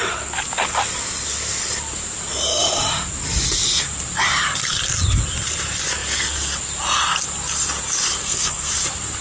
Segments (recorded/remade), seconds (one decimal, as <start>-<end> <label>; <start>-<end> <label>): 0.0-8.2 recorded; 8.2-8.7 remade; 8.7-9.2 recorded